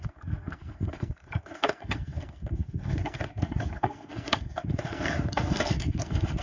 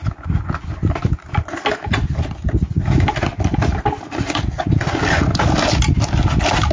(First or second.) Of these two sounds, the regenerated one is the first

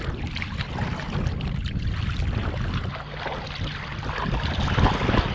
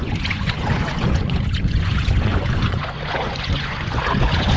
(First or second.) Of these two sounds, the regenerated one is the second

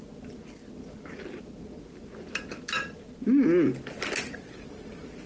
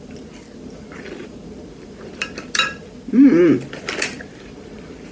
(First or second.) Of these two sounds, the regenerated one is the second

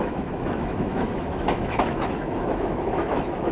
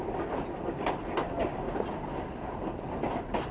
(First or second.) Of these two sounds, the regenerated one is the first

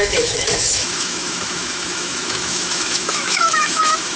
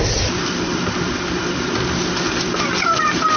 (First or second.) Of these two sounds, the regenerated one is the first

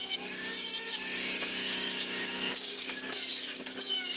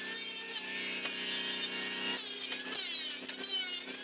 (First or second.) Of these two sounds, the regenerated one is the first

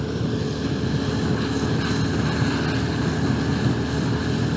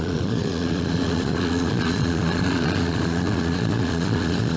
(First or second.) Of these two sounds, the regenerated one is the second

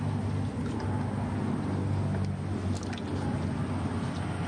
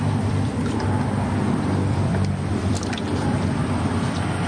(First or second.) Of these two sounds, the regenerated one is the second